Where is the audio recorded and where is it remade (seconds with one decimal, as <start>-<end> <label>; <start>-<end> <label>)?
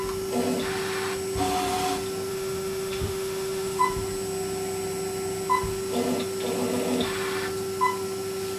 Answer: 0.0-2.3 recorded; 2.3-3.8 remade; 3.8-8.6 recorded